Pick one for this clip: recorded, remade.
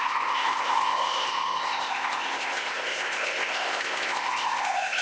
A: remade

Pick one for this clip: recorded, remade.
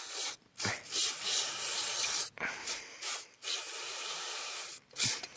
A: recorded